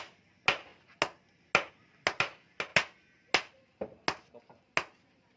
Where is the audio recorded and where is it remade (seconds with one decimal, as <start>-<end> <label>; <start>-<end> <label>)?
0.0-5.4 recorded